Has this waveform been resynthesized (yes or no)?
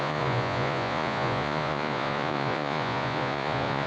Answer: yes